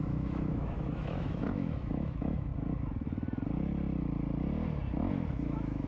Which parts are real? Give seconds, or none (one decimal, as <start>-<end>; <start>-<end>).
2.5-5.3